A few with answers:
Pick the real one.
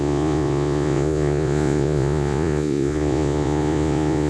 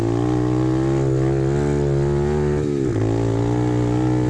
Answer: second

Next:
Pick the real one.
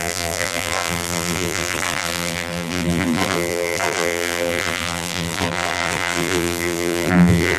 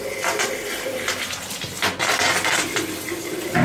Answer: second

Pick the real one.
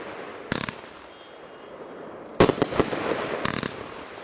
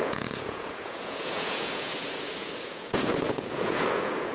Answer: first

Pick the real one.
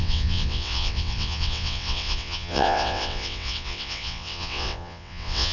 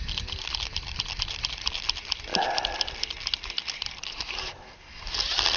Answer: second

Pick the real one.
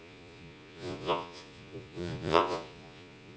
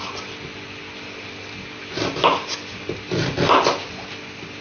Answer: second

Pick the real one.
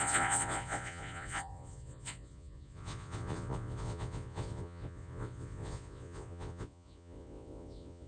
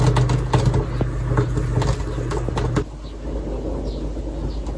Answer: second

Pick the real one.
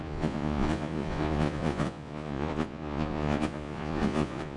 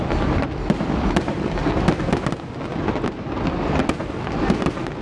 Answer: second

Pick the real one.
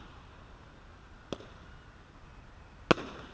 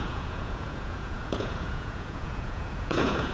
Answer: first